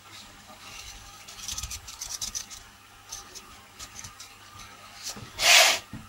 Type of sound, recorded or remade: remade